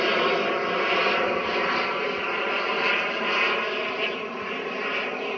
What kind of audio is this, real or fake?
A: real